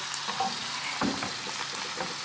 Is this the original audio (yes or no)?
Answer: yes